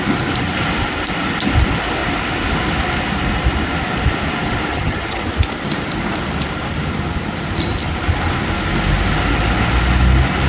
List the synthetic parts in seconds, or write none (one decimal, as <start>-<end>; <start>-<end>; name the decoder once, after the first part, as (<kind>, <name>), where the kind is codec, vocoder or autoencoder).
4.7-5.3 (vocoder, HiFi-GAN)